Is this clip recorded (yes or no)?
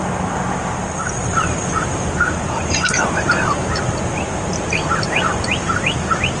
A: yes